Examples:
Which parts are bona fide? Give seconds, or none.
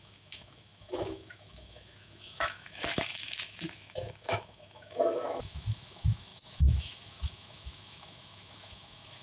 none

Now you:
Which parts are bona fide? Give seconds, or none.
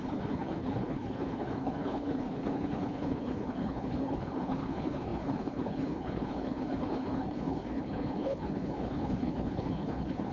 none